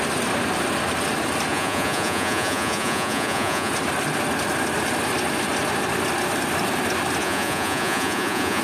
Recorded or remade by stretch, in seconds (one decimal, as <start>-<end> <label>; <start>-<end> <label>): 0.0-1.5 recorded; 1.5-3.7 remade; 3.7-7.2 recorded; 7.2-8.6 remade